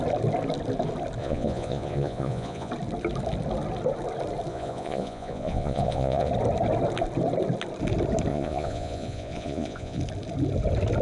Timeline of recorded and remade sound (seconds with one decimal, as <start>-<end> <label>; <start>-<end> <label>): 0.0-1.2 recorded; 1.2-2.7 remade; 2.7-4.5 recorded; 4.5-6.3 remade; 6.3-8.3 recorded; 8.3-10.0 remade; 10.0-11.0 recorded